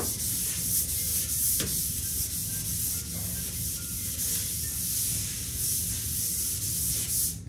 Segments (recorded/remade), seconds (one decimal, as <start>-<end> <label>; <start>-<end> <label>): 0.0-7.5 recorded